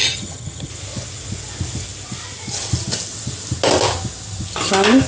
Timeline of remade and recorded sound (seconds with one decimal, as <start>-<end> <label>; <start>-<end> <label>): 0.0-0.7 remade; 0.7-5.1 recorded